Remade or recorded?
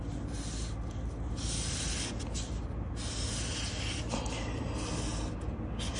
recorded